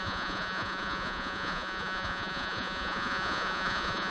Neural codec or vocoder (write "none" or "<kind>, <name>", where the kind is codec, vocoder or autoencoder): vocoder, Vocos